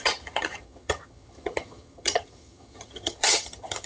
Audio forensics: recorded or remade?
remade